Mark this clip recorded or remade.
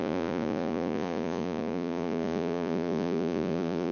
remade